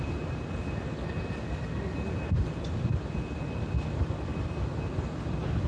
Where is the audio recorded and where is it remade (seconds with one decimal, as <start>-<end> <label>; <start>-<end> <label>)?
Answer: 0.0-5.7 recorded